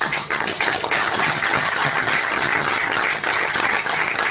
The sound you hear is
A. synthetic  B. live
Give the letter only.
A